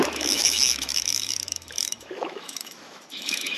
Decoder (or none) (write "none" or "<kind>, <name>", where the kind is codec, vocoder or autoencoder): autoencoder, DAC-VAE